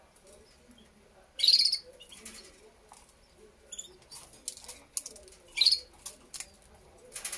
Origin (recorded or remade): recorded